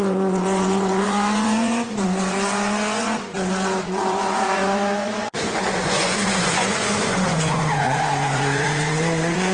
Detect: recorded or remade remade